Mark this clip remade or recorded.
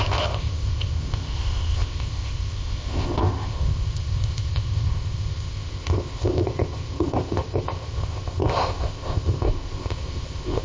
remade